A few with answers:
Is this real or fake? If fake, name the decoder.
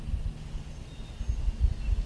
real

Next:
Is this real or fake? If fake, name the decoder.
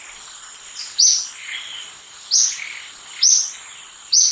real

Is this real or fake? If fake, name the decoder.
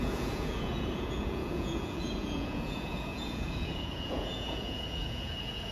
fake, vocoder, Vocos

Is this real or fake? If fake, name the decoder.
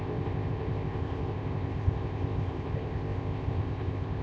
fake, codec, ZipCodec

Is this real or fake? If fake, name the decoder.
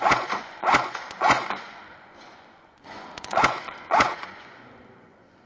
fake, vocoder, Vocos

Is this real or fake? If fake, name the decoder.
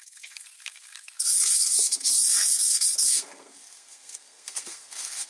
fake, codec, SNAC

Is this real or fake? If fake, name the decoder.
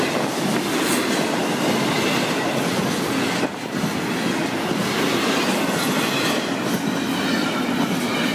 real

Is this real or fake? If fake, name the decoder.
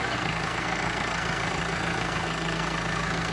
fake, codec, SNAC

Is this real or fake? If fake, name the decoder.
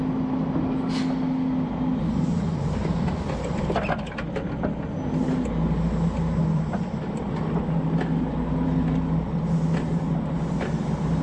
real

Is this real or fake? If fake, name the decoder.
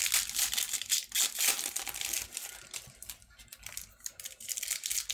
real